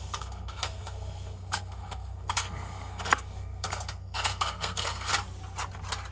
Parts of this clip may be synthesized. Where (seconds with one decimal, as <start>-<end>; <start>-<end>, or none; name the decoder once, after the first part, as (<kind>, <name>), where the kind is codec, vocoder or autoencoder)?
0.0-5.1 (codec, SNAC)